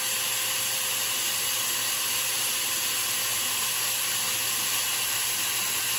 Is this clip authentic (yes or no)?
yes